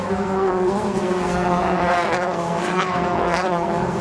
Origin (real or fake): fake